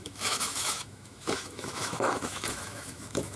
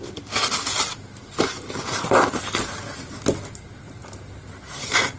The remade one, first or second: first